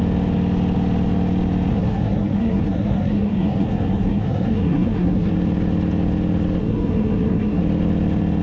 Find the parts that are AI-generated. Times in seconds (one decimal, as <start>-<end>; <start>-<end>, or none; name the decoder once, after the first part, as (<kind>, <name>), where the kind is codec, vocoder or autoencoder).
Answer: 1.7-5.3 (codec, SNAC); 6.6-7.6